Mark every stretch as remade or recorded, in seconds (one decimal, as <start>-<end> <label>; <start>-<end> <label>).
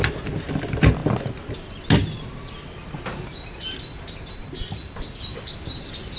0.0-4.4 recorded; 4.4-5.2 remade; 5.2-6.2 recorded